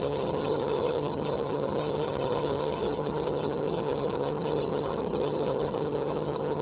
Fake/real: fake